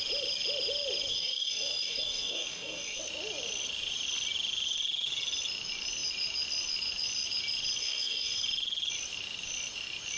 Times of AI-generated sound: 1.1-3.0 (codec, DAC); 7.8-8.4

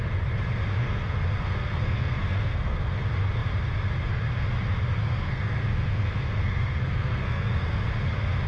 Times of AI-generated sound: 0.8-3.0 (codec, SNAC); 5.0-7.9

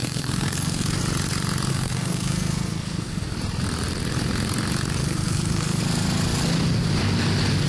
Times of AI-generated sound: 0.0-1.0 (codec, SNAC); 1.7-3.4; 5.0-5.8

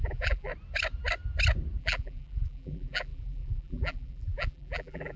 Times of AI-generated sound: 0.0-0.5 (vocoder, BigVGAN v2); 1.8-5.2

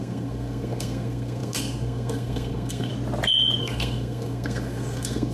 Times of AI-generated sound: 0.0-2.9 (codec, SNAC); 3.6-5.3

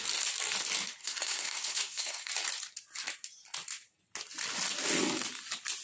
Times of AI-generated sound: 1.0-2.3 (codec, SNAC)